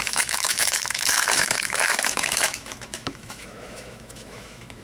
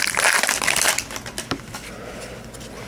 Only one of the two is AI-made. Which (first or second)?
first